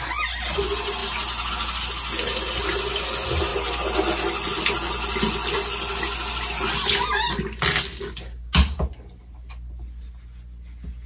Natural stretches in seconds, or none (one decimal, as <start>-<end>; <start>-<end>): 0.0-11.1